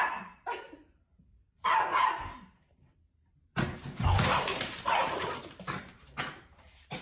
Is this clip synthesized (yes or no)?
yes